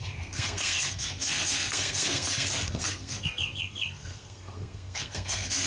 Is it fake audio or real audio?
fake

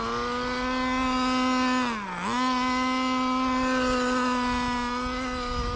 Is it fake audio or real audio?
real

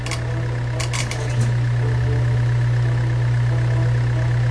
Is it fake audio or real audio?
real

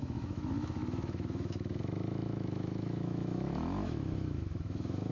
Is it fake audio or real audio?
fake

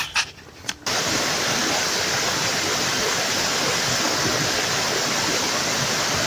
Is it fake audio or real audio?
real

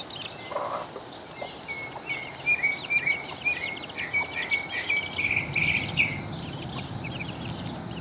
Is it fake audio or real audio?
real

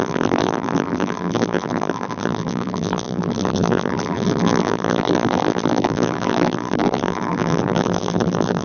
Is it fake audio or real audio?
fake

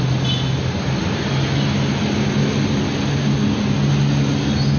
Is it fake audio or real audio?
real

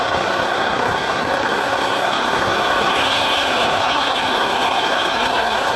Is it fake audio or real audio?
fake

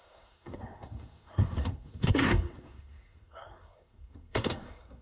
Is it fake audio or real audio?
fake